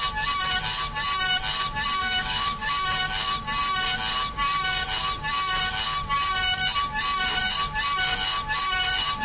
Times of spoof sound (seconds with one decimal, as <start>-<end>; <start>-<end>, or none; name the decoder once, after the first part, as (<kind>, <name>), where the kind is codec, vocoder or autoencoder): 2.0-2.7 (autoencoder, DAC-VAE)